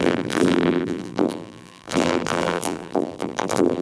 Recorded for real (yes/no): no